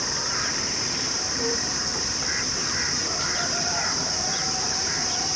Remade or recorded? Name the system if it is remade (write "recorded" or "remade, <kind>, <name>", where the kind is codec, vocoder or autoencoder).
remade, vocoder, BigVGAN v2